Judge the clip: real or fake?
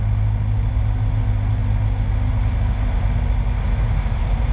real